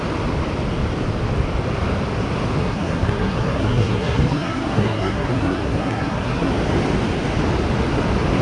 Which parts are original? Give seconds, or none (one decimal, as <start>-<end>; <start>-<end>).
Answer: 0.0-2.6; 6.5-8.4